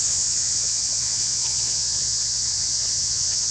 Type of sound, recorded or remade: remade